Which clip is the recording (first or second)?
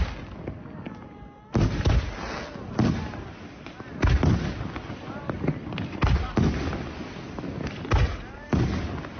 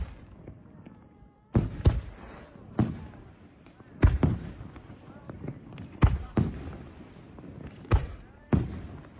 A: first